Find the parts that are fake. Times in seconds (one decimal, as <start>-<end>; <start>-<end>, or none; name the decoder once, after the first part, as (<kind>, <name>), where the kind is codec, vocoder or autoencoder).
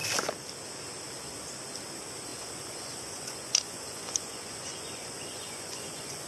2.3-6.3 (vocoder, Vocos)